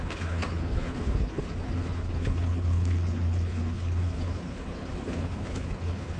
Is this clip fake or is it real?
fake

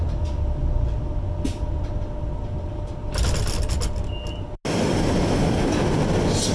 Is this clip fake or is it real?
real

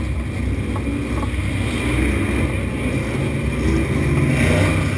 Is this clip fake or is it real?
real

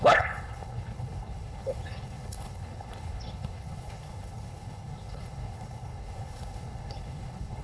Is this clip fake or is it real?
fake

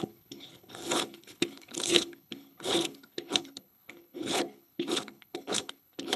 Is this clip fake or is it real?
fake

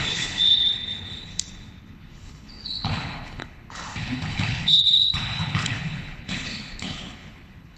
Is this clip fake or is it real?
fake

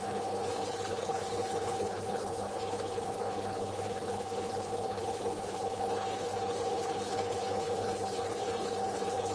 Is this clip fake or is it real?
fake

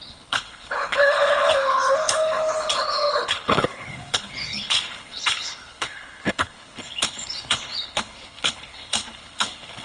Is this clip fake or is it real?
fake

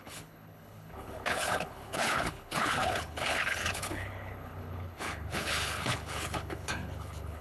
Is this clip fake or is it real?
fake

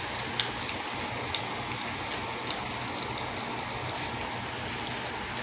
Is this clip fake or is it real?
real